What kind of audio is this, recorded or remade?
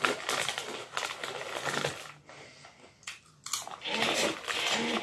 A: recorded